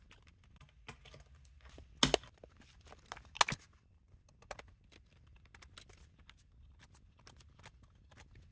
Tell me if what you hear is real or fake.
real